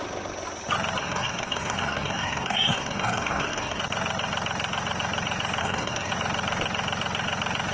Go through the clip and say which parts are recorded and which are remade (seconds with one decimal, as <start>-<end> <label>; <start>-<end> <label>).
0.0-1.0 recorded; 1.0-3.8 remade; 3.8-5.6 recorded; 5.6-6.1 remade; 6.1-7.7 recorded